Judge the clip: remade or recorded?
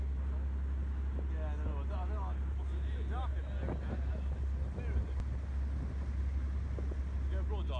recorded